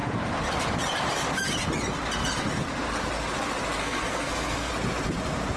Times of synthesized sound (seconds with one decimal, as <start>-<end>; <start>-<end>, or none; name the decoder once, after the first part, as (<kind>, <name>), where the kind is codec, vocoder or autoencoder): 3.8-4.7 (codec, SNAC)